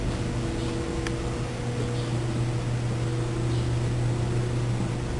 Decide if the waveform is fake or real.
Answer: real